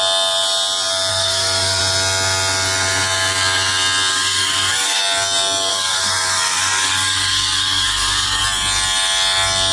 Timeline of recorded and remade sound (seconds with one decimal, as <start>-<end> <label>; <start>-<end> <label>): 0.0-1.1 recorded; 1.1-1.8 remade; 1.8-4.1 recorded; 4.1-5.0 remade; 5.0-5.7 recorded; 5.7-8.4 remade; 8.4-9.7 recorded